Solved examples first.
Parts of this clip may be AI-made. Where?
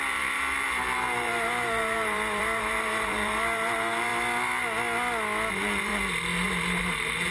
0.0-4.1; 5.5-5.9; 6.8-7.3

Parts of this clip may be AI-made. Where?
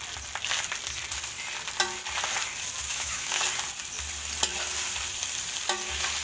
2.9-3.4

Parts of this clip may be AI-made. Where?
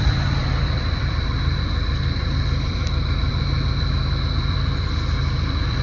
0.0-5.8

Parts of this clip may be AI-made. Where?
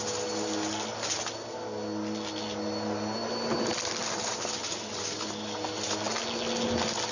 none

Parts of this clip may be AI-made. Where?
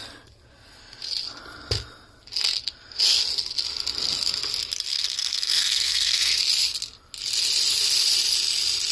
4.9-6.4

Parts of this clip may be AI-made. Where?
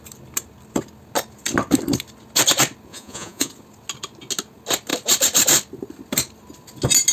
2.9-3.5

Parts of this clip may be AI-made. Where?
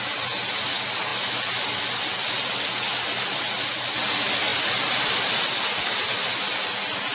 none